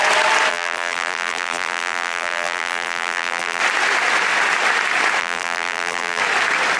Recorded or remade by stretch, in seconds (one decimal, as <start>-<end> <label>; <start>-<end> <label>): 0.0-0.5 recorded; 0.5-3.6 remade; 3.6-5.2 recorded; 5.2-6.2 remade; 6.2-6.8 recorded